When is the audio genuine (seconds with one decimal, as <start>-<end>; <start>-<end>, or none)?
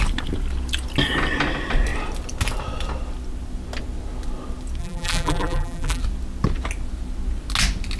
0.0-4.8; 6.0-8.0